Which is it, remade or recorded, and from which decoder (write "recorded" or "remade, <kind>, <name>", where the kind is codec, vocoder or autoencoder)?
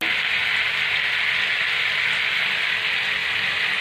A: recorded